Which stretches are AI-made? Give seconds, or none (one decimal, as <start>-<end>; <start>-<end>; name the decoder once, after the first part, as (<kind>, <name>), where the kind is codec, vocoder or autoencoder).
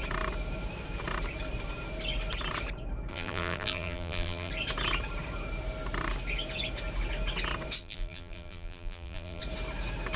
3.1-4.5 (vocoder, BigVGAN v2); 7.8-9.4